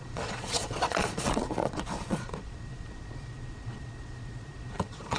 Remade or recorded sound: remade